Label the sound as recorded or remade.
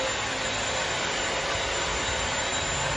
recorded